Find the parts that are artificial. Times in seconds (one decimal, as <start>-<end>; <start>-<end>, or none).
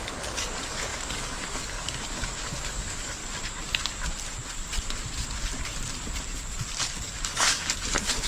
0.0-3.2; 6.9-8.3